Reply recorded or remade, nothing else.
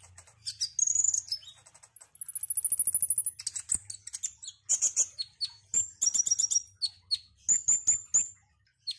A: recorded